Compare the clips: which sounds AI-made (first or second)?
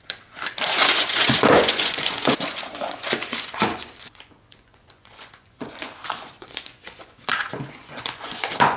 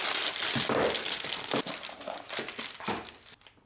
first